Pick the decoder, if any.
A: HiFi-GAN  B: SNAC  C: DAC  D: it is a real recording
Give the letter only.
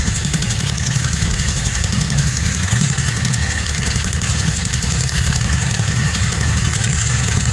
B